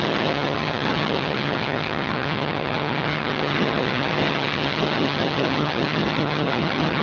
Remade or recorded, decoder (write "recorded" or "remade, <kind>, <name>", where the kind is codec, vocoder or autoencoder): remade, vocoder, HiFi-GAN